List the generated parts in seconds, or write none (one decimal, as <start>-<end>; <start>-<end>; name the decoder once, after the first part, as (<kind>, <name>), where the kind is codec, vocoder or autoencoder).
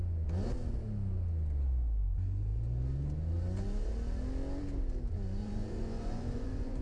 5.4-6.8 (vocoder, Vocos)